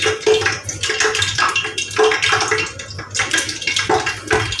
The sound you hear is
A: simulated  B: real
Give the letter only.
B